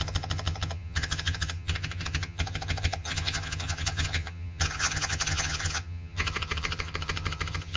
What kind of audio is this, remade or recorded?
remade